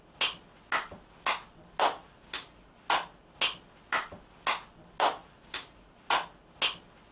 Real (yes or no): yes